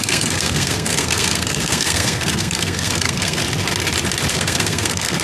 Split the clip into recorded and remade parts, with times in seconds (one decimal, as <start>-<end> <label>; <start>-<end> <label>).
0.0-3.4 remade; 3.4-4.3 recorded; 4.3-5.2 remade